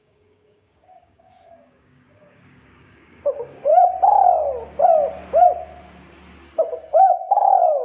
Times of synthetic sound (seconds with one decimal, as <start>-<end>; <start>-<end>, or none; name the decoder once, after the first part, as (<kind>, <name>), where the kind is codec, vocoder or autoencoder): 0.0-3.7 (codec, DAC); 6.9-7.8